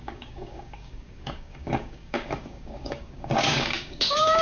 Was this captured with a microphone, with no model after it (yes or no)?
no